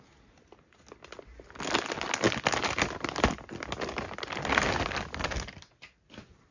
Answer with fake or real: real